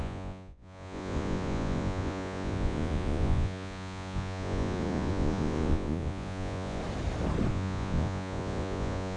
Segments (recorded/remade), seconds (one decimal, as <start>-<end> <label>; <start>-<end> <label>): 0.0-6.8 remade; 6.8-7.5 recorded; 7.5-9.2 remade